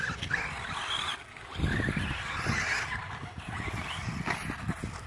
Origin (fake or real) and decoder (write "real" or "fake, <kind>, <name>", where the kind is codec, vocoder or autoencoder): real